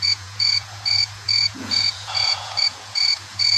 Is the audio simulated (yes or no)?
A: yes